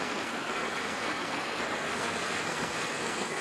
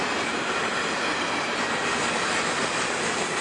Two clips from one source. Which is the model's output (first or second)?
first